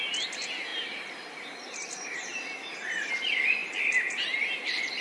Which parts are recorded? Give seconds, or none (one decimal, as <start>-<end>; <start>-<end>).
0.0-5.0